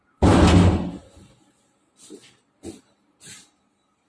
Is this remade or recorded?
recorded